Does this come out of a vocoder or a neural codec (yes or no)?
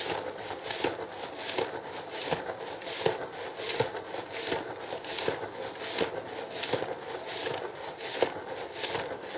no